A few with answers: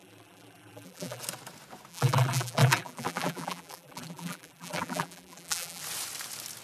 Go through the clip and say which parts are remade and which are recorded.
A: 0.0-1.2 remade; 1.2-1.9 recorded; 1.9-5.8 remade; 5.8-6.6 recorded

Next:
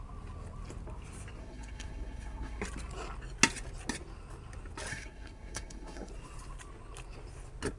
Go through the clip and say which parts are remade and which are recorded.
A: 0.0-1.4 recorded; 1.4-2.6 remade; 2.6-4.9 recorded; 4.9-6.1 remade; 6.1-7.8 recorded

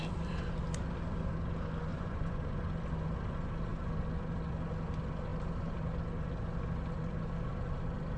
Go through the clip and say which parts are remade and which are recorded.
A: 0.0-1.9 recorded; 1.9-2.6 remade; 2.6-8.2 recorded

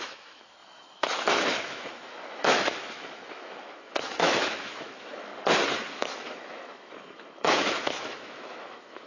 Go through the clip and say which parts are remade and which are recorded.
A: 0.0-5.3 remade; 5.3-5.9 recorded; 5.9-9.1 remade

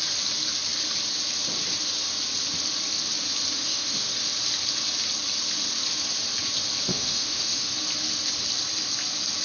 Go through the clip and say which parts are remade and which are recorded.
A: 0.0-3.6 recorded; 3.6-4.1 remade; 4.1-6.9 recorded; 6.9-7.7 remade; 7.7-9.4 recorded

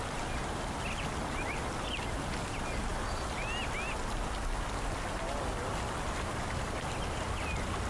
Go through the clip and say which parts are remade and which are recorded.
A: 0.0-7.9 recorded